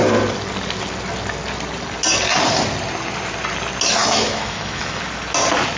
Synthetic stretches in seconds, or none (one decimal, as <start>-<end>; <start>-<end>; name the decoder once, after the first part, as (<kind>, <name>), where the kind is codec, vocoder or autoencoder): 4.0-5.0 (autoencoder, DAC-VAE)